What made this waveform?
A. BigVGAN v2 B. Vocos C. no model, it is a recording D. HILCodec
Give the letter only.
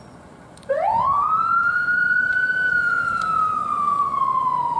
B